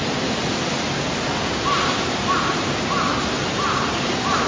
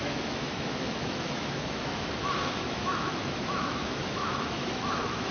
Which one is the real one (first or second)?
first